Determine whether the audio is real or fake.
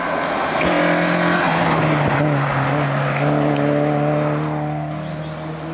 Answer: real